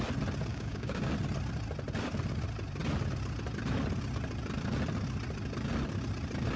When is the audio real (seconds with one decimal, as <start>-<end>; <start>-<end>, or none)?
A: 0.0-0.5; 1.1-6.6